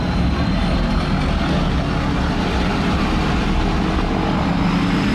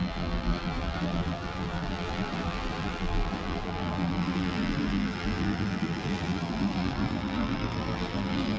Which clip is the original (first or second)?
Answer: first